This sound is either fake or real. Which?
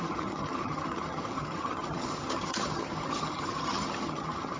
fake